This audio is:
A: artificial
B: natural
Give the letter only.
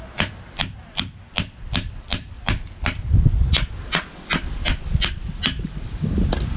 B